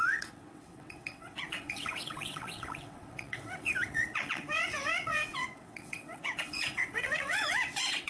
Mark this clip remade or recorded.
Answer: remade